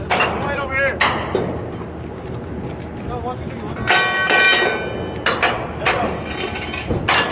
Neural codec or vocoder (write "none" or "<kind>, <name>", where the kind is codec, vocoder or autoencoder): none